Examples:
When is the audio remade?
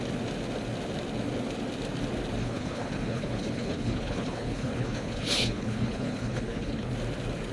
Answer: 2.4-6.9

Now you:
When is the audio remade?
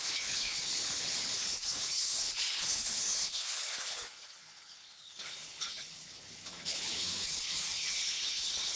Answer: 0.0-8.8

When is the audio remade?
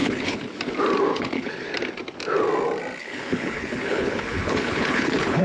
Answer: 0.0-0.6; 1.1-1.7; 3.0-5.4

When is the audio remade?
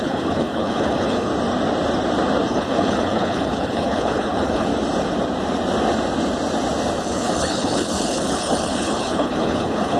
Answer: 0.0-1.3; 2.5-4.7; 7.0-10.0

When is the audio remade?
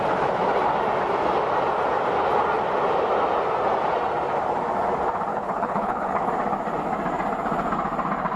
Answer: 5.3-6.3